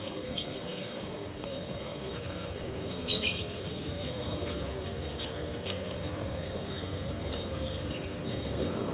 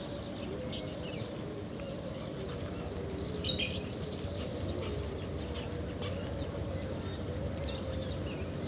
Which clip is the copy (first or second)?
first